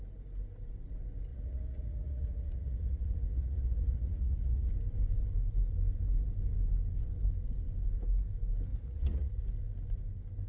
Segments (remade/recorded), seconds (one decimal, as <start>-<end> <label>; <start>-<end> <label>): 0.0-1.3 recorded; 1.3-4.7 remade; 4.7-8.7 recorded; 8.7-9.4 remade; 9.4-10.5 recorded